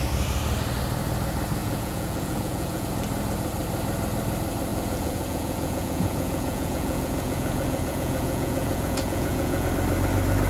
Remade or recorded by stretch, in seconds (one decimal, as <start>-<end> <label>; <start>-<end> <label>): 0.0-1.6 recorded; 1.6-2.9 remade; 2.9-4.7 recorded; 4.7-9.7 remade; 9.7-10.5 recorded